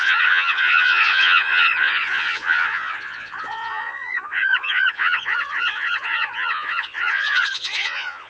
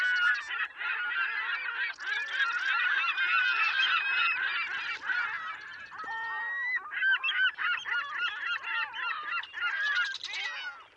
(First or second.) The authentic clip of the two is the second